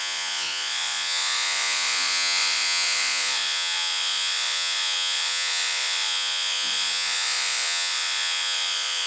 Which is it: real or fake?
fake